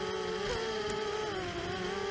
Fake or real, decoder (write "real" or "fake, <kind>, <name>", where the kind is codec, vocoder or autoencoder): real